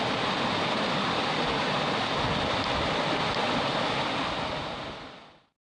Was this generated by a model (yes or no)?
no